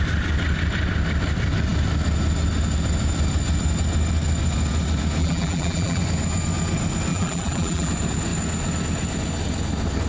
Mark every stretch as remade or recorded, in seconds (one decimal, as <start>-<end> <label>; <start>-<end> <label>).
0.0-5.2 recorded; 5.2-6.0 remade; 6.0-7.1 recorded; 7.1-7.9 remade; 7.9-10.1 recorded